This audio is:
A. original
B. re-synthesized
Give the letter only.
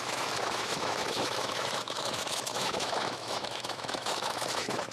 B